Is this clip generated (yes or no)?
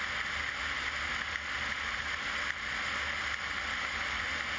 no